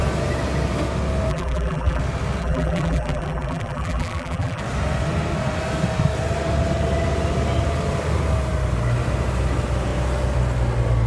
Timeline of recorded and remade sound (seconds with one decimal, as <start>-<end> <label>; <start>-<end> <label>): 0.0-1.3 recorded; 1.3-2.0 remade; 2.0-2.4 recorded; 2.4-4.6 remade; 4.6-11.1 recorded